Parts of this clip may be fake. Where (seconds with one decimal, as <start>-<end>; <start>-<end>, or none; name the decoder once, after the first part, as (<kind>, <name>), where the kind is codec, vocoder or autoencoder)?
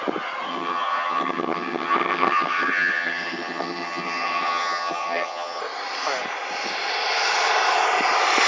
0.5-5.6 (vocoder, HiFi-GAN)